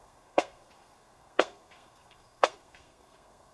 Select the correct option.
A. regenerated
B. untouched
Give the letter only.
A